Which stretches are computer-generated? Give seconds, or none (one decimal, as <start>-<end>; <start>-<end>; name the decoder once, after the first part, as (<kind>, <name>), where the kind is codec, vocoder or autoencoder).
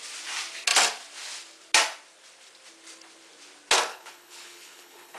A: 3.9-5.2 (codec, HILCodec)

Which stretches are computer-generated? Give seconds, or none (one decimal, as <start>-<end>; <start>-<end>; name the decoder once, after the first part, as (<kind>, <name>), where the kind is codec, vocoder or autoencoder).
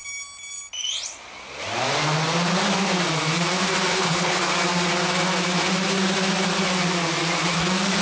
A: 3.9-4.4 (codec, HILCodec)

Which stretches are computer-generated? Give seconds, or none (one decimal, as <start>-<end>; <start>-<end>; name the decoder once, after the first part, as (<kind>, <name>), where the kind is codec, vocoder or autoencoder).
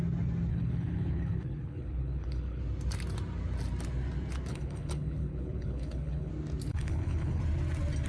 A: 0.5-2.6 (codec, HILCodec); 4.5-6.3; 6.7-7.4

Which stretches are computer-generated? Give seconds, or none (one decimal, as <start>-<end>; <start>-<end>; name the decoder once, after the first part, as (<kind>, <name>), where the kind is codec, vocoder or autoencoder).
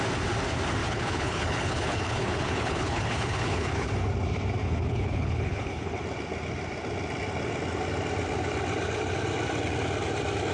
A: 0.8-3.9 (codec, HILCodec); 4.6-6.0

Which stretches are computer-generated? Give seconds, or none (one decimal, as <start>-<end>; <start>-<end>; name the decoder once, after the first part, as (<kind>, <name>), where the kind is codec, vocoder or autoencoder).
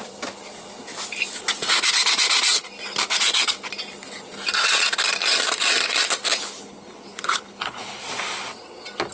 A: 6.3-8.0 (codec, HILCodec)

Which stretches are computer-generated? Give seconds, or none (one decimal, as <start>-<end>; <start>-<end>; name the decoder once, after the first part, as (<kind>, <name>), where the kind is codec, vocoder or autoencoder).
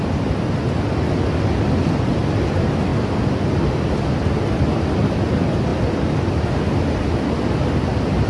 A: none